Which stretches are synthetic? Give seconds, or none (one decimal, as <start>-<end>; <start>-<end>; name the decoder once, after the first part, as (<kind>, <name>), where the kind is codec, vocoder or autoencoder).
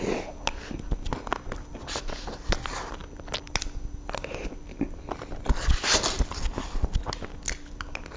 none